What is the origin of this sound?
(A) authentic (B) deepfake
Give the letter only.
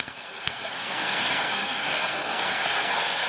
B